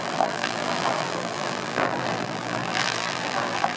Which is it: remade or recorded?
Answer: remade